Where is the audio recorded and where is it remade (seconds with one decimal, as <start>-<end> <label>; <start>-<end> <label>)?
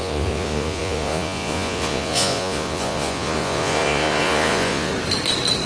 0.0-4.9 remade; 4.9-5.7 recorded